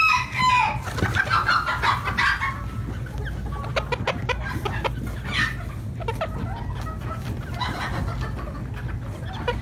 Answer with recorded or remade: recorded